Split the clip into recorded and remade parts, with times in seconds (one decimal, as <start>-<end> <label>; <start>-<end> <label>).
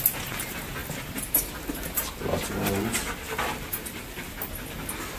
0.0-5.2 recorded